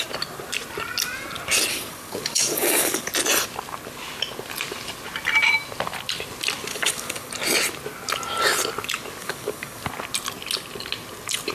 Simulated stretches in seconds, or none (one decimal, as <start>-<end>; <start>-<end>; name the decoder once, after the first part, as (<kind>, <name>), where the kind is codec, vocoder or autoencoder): 1.7-3.1 (codec, DAC); 6.7-7.3; 9.2-9.9